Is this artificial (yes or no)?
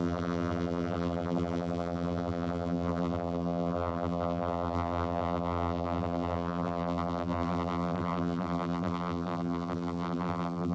yes